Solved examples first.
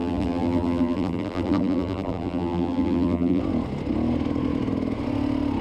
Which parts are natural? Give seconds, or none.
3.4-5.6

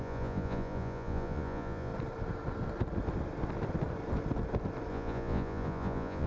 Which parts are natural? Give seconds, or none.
1.9-4.9

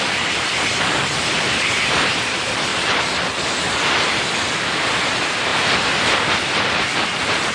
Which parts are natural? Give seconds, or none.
none

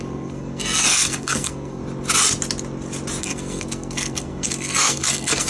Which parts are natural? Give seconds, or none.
1.8-3.2

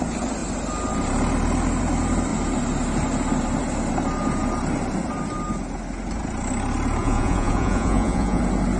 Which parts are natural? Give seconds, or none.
0.0-7.0; 8.4-8.8